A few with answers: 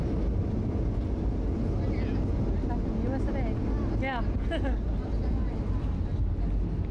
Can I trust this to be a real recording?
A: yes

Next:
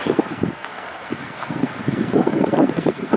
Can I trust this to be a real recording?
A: no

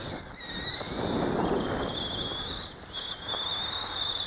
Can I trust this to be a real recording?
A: yes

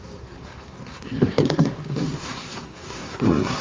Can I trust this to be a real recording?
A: no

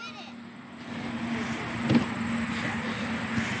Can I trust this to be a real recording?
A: yes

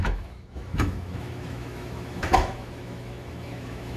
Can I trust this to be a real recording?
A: no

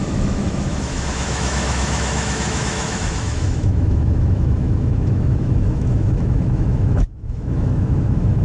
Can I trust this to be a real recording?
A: no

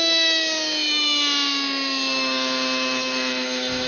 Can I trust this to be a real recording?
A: no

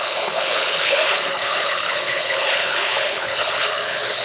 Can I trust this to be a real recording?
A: no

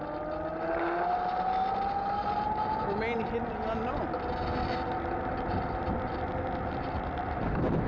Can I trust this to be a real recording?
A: yes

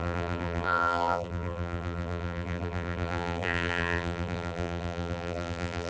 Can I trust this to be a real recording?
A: no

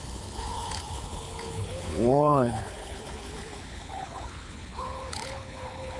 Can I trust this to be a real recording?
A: no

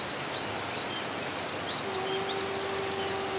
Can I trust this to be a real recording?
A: yes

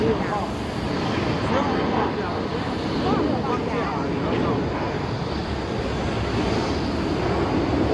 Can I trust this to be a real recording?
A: yes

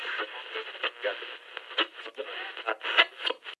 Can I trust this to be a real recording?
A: yes